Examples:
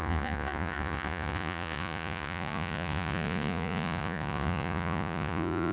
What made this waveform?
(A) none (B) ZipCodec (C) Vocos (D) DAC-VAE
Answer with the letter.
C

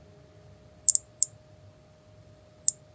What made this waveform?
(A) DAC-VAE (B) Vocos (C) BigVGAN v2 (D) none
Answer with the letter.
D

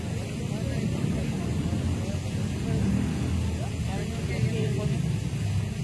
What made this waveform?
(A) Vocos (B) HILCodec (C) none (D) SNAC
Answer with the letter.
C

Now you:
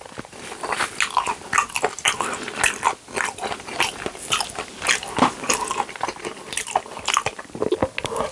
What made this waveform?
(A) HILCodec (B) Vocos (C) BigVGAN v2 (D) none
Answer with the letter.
D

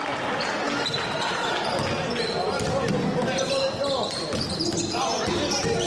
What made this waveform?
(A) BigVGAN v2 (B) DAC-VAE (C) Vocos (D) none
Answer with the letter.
D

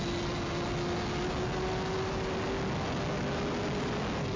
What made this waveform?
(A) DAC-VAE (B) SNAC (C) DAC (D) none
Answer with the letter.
D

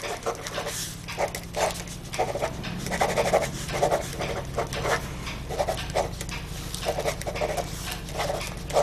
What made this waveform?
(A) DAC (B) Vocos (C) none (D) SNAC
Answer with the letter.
C